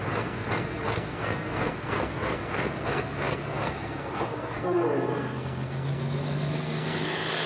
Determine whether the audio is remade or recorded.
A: remade